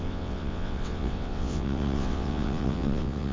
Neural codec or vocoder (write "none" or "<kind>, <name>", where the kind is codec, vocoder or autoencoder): vocoder, WaveNeXt